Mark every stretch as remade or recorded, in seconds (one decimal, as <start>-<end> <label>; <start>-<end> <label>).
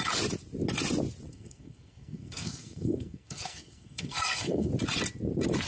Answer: 0.0-1.3 recorded; 1.3-4.7 remade; 4.7-5.7 recorded